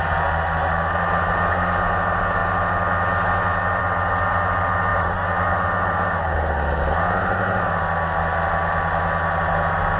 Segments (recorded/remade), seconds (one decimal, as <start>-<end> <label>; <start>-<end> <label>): 0.0-10.0 recorded